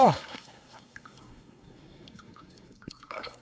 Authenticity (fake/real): fake